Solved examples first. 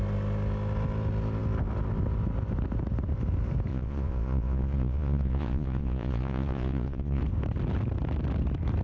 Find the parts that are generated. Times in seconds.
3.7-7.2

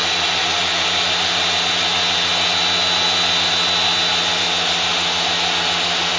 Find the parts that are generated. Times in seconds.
none